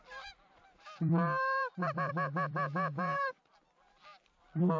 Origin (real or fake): fake